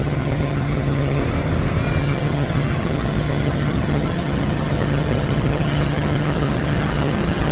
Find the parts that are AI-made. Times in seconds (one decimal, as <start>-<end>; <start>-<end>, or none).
0.0-1.2; 2.0-7.5